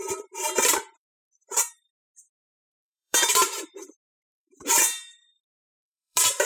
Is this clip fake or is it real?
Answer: fake